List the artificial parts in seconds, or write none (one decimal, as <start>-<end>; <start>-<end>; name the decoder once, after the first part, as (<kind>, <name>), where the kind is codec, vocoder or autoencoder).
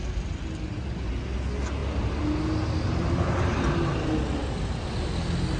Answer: none